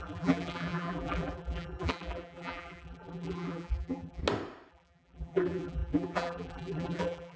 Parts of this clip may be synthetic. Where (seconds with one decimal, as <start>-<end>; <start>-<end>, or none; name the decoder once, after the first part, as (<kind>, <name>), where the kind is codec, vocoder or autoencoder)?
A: 0.0-4.2 (vocoder, BigVGAN v2); 4.7-7.4